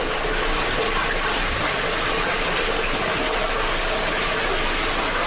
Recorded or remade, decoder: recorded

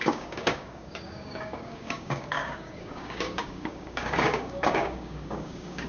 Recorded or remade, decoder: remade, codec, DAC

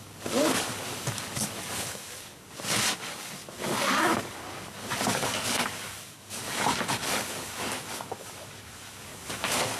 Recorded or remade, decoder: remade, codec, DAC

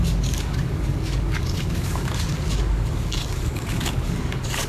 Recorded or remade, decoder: remade, codec, DAC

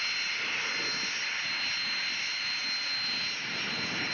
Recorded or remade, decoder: recorded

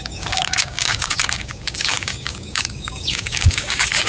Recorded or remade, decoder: remade, codec, DAC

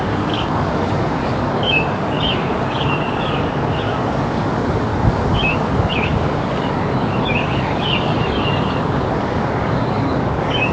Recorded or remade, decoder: remade, codec, DAC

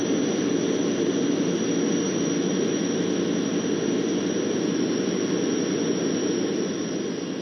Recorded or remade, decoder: recorded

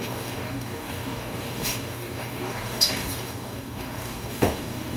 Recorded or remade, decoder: remade, codec, DAC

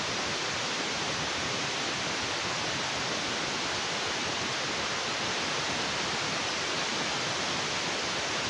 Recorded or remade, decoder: recorded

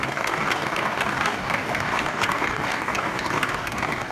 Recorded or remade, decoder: remade, codec, DAC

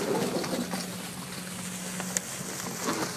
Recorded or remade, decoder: recorded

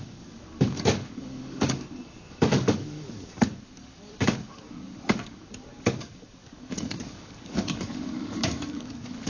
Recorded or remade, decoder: remade, codec, DAC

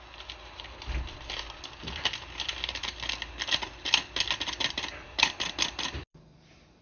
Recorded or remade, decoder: recorded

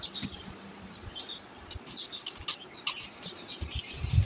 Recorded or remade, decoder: recorded